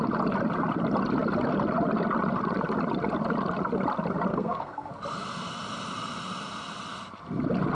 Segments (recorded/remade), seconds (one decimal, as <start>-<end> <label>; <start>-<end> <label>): 0.0-4.3 recorded; 4.3-4.9 remade; 4.9-7.7 recorded